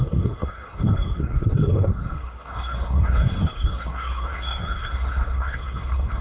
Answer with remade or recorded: remade